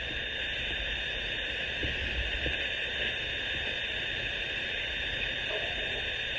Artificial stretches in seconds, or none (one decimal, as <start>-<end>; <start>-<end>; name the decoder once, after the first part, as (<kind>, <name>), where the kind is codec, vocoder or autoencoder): none